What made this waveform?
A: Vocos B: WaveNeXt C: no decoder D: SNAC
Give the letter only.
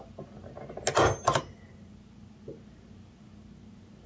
C